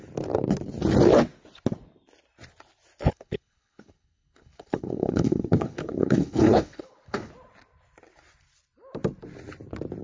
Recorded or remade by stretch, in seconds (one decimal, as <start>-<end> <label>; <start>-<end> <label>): 0.0-3.0 recorded; 3.0-7.3 remade; 7.3-10.0 recorded